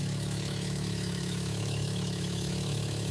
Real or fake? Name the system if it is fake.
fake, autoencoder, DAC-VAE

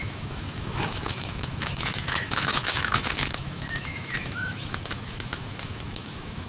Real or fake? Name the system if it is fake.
fake, autoencoder, DAC-VAE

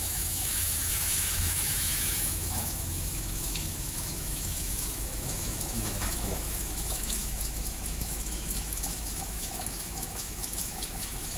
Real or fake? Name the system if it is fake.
fake, autoencoder, DAC-VAE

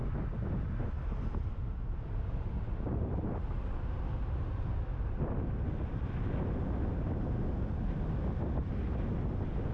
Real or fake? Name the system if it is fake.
real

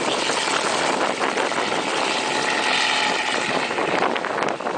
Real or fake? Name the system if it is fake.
real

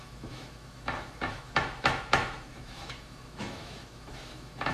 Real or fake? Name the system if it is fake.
fake, autoencoder, DAC-VAE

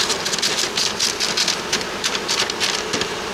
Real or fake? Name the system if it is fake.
real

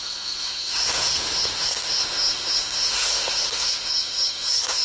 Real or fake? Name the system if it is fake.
fake, autoencoder, DAC-VAE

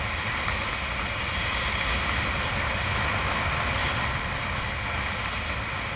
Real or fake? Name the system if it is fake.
real